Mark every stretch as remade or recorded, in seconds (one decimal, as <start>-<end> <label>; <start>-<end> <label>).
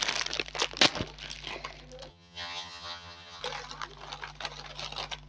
0.0-2.1 recorded; 2.1-3.4 remade; 3.4-5.3 recorded